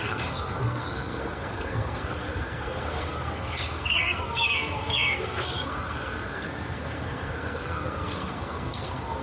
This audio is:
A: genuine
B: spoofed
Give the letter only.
B